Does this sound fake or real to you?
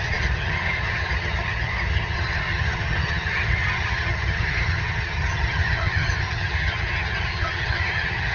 fake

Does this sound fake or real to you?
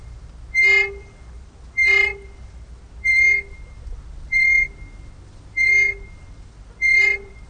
real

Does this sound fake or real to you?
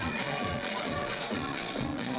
fake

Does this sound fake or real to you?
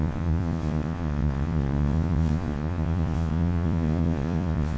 fake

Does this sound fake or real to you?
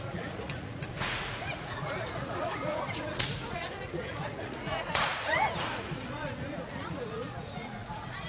fake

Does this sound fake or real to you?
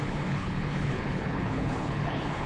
fake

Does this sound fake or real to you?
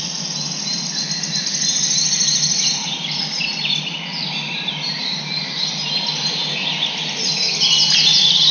real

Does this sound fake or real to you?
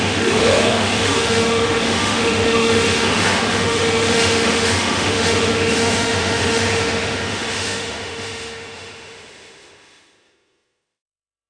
fake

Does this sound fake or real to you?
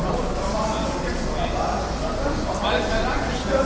real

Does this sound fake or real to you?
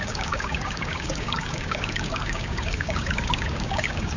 fake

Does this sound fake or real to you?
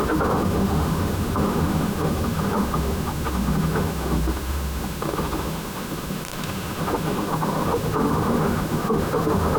fake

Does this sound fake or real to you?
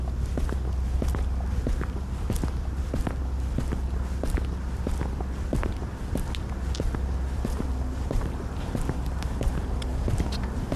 real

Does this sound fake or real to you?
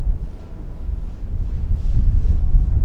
real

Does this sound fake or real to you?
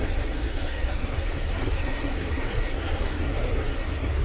fake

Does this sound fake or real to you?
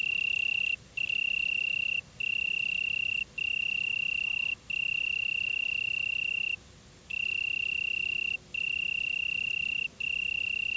real